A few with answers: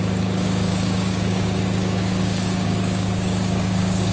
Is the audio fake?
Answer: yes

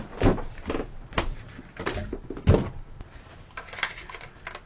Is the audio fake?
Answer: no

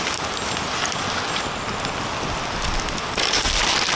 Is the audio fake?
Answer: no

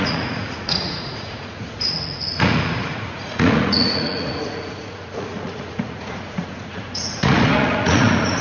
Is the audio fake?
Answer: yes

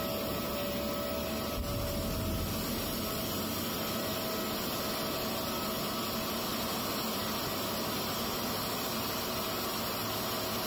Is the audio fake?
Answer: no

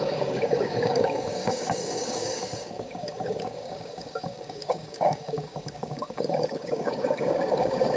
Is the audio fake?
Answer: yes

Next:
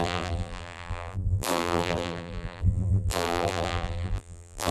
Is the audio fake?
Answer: yes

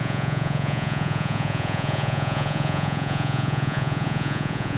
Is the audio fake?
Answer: yes